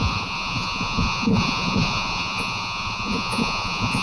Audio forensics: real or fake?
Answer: fake